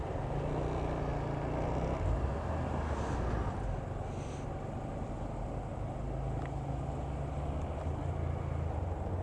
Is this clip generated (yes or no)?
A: no